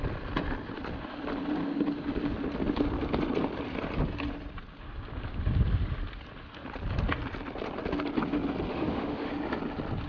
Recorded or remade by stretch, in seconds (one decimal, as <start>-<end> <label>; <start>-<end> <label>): 0.0-8.7 recorded; 8.7-9.3 remade; 9.3-10.1 recorded